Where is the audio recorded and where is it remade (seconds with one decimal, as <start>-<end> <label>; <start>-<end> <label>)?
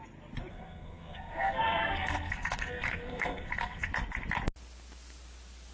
0.0-0.5 recorded; 0.5-3.9 remade; 3.9-5.7 recorded